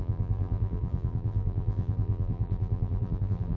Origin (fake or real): fake